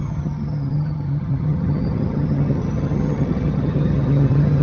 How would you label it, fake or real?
fake